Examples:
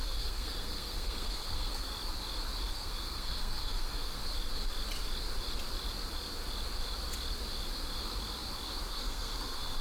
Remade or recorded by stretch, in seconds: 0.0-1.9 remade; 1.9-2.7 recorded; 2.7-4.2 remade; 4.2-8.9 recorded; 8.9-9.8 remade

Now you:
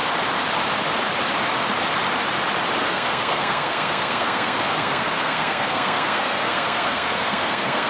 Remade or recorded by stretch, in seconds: 0.0-2.9 recorded; 2.9-7.9 remade

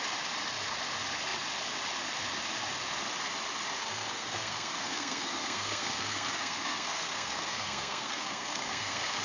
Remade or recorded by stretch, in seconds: 0.0-3.8 recorded; 3.8-9.2 remade

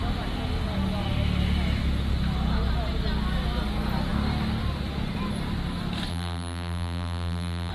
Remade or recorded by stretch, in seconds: 0.0-6.1 recorded; 6.1-7.7 remade

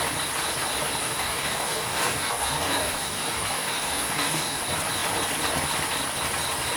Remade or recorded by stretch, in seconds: 0.0-1.0 recorded; 1.0-4.6 remade; 4.6-6.8 recorded

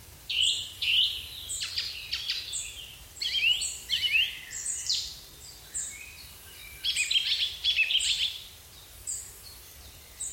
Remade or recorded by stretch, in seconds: 0.0-0.9 remade; 0.9-2.8 recorded; 2.8-6.6 remade; 6.6-7.4 recorded; 7.4-10.3 remade

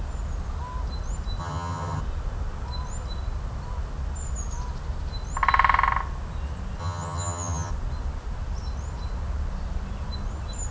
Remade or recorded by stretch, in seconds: 0.0-1.4 recorded; 1.4-2.0 remade; 2.0-6.8 recorded; 6.8-7.7 remade; 7.7-10.7 recorded